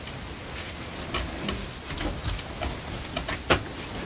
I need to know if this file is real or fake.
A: real